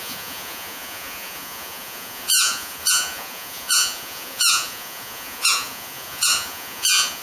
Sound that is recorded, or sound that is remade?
remade